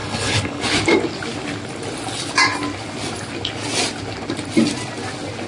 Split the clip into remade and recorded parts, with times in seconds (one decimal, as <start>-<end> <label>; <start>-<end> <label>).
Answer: 0.0-0.6 remade; 0.6-5.5 recorded